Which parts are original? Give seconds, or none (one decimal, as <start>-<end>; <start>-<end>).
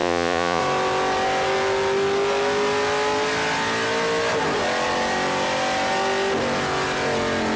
0.6-7.6